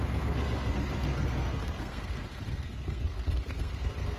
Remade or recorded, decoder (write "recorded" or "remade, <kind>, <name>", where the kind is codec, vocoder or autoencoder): remade, codec, SNAC